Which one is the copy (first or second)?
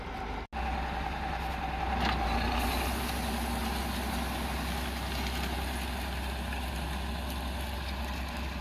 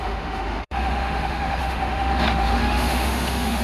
second